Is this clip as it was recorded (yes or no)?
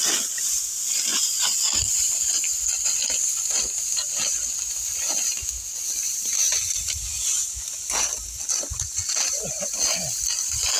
yes